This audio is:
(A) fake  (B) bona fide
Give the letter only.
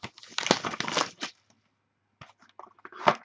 B